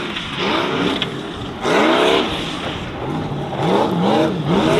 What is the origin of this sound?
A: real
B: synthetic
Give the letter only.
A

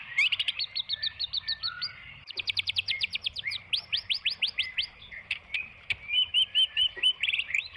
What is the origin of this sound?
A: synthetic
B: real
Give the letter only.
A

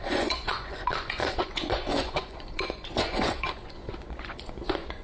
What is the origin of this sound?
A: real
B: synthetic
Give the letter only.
B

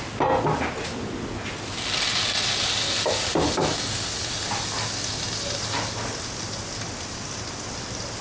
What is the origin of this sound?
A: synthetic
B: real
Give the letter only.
B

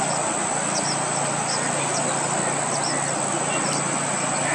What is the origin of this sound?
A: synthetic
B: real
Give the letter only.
B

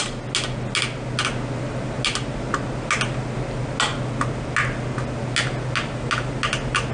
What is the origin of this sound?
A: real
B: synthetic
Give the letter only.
A